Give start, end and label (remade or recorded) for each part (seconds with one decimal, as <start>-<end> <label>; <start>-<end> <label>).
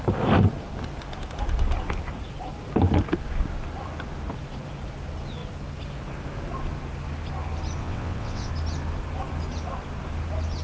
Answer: 0.0-7.8 recorded; 7.8-8.5 remade; 8.5-10.6 recorded